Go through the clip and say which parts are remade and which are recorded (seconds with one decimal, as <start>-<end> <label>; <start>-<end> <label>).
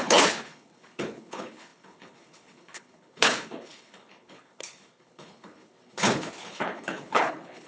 0.0-7.7 remade